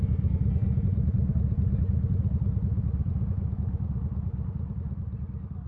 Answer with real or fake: real